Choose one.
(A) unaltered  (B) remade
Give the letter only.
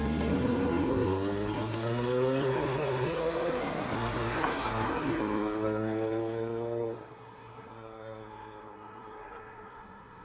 B